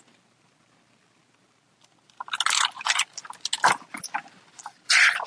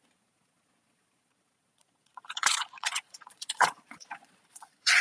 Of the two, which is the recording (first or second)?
first